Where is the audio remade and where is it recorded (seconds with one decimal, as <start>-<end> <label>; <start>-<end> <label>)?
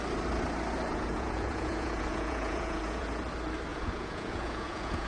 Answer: 0.0-0.9 recorded; 0.9-3.2 remade; 3.2-3.7 recorded; 3.7-5.1 remade